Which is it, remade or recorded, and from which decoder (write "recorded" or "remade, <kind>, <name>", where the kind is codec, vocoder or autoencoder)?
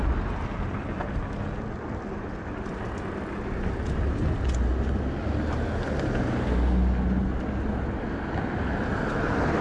recorded